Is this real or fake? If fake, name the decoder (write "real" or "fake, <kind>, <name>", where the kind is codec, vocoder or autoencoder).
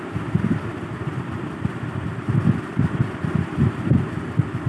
real